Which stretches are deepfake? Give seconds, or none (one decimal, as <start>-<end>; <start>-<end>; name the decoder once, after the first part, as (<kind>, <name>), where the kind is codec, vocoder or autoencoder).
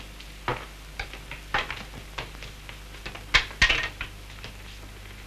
none